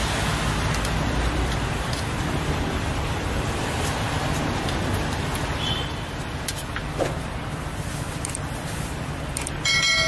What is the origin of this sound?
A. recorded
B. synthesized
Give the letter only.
B